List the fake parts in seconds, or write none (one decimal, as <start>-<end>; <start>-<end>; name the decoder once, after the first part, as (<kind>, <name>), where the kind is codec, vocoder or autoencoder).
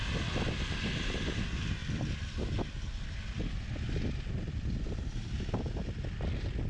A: none